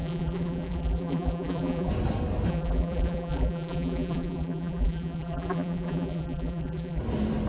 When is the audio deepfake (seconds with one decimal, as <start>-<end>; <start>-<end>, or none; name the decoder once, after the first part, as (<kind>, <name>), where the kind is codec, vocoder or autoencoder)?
0.0-1.9 (vocoder, BigVGAN v2); 2.5-7.0